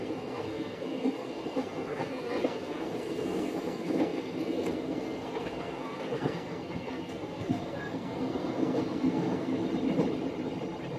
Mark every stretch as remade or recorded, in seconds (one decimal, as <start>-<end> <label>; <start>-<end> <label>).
0.0-9.6 remade; 9.6-11.0 recorded

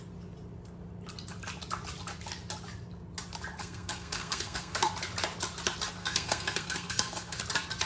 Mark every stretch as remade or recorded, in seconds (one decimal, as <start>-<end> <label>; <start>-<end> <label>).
0.0-3.6 recorded; 3.6-4.9 remade; 4.9-6.0 recorded; 6.0-7.4 remade; 7.4-7.9 recorded

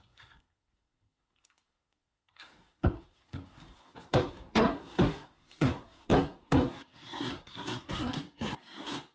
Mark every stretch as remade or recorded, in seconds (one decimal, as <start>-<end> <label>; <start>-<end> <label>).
0.0-9.1 remade

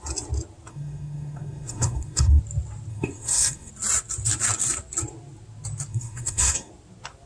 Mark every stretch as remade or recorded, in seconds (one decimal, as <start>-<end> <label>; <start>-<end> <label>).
0.0-0.7 recorded; 0.7-2.4 remade; 2.4-2.9 recorded; 2.9-3.7 remade; 3.7-5.9 recorded; 5.9-6.7 remade; 6.7-7.3 recorded

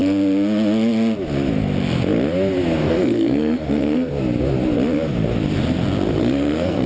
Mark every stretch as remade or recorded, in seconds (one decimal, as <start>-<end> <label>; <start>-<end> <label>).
0.0-2.8 recorded; 2.8-4.1 remade; 4.1-6.2 recorded; 6.2-6.9 remade

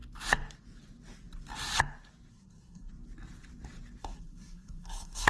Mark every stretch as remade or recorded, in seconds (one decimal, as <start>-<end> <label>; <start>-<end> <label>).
0.0-2.3 recorded; 2.3-2.9 remade; 2.9-4.0 recorded; 4.0-5.3 remade